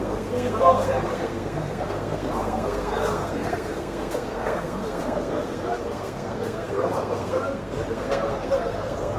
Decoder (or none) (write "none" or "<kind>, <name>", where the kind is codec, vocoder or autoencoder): codec, SNAC